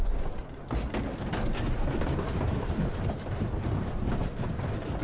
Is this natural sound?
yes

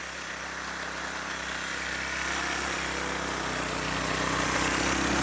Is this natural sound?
yes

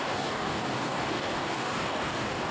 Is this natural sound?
no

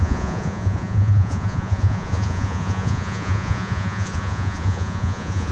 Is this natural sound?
no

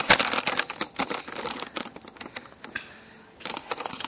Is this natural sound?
yes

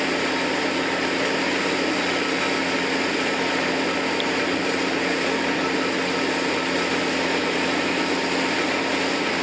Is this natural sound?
yes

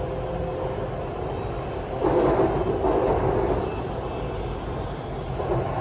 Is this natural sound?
yes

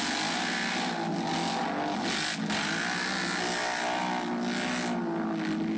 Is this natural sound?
yes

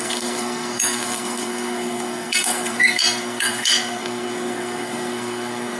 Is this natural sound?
no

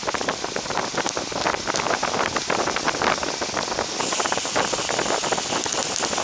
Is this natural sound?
yes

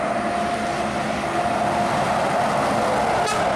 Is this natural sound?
yes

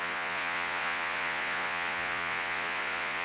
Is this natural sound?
no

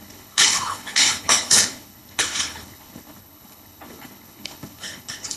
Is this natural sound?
no